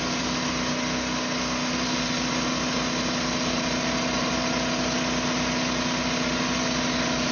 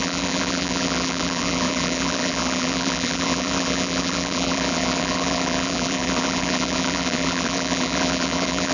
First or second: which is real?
first